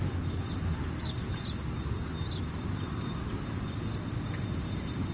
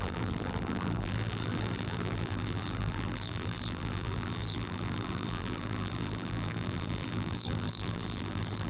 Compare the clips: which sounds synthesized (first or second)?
second